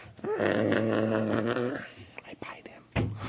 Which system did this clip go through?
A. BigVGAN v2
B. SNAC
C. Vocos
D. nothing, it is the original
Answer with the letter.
D